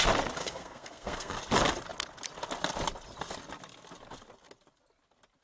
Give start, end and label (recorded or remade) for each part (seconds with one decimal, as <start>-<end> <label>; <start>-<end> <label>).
0.0-0.4 recorded; 0.4-1.4 remade; 1.4-5.4 recorded